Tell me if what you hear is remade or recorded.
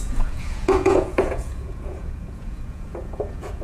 remade